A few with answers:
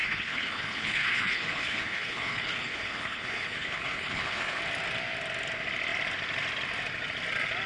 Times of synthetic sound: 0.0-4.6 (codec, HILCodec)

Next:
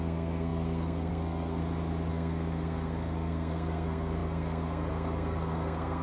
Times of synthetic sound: 0.0-1.6 (codec, SNAC); 2.1-6.0

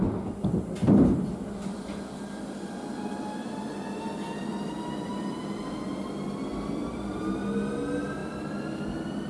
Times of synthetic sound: 0.8-5.4 (vocoder, BigVGAN v2); 6.5-7.2; 8.2-9.3